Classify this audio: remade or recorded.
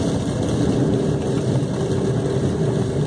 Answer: recorded